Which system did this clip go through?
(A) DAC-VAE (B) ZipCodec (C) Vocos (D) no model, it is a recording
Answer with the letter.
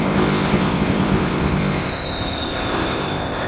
B